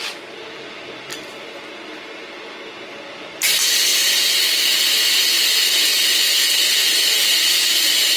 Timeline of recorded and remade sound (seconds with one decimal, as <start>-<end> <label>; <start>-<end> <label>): 0.0-1.1 remade; 1.1-3.1 recorded; 3.1-3.9 remade; 3.9-8.2 recorded